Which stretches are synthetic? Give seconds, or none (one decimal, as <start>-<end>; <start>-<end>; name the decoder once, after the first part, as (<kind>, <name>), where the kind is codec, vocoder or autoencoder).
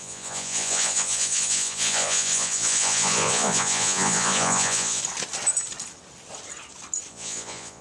0.0-5.0 (vocoder, Vocos); 7.1-7.8